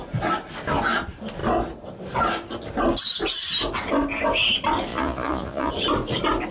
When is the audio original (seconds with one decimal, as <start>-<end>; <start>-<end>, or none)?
0.0-4.9; 5.7-6.5